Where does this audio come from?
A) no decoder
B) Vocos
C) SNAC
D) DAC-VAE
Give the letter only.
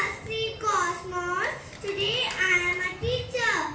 A